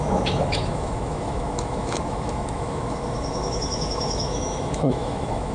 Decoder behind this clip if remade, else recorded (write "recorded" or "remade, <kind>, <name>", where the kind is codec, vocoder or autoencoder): remade, autoencoder, DAC-VAE